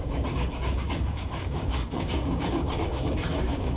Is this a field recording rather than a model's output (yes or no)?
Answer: no